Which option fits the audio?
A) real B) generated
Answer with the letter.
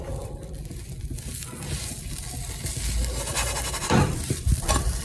B